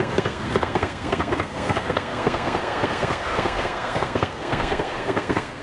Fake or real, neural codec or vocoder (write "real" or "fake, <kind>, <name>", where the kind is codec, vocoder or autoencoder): fake, codec, SNAC